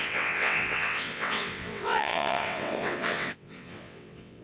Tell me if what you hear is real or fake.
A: fake